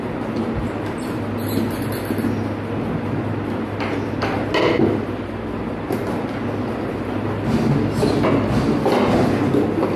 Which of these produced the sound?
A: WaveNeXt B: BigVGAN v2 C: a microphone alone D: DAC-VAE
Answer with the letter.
C